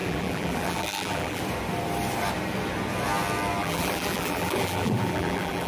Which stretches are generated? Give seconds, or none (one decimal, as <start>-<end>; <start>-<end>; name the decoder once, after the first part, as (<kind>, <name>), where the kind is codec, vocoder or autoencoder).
0.0-1.4 (vocoder, BigVGAN v2); 3.6-5.7

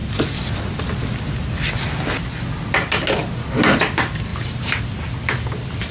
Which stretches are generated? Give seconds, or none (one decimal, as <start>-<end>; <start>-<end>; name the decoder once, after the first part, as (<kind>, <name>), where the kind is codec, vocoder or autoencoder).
3.2-3.8 (vocoder, BigVGAN v2); 4.3-4.8